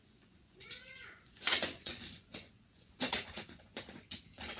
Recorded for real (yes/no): no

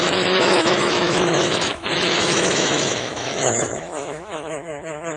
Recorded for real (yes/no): no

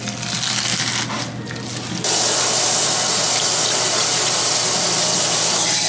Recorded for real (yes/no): yes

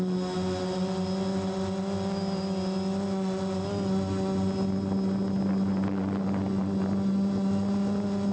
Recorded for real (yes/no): yes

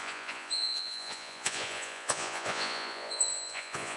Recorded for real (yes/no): no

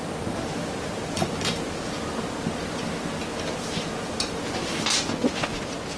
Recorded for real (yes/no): yes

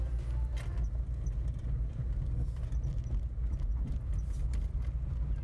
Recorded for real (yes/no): yes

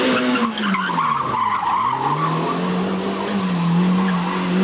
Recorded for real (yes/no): yes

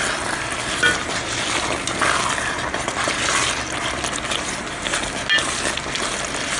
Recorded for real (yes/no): yes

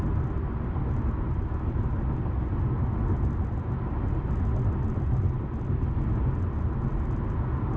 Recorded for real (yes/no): yes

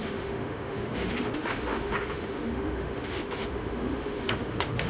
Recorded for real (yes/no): no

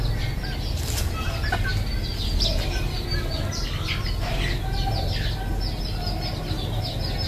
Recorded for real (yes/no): yes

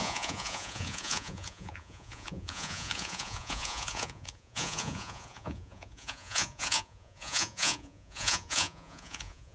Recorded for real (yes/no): no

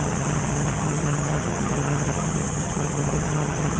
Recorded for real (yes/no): no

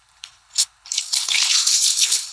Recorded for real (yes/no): no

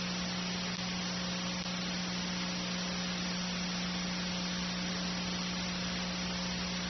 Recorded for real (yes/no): yes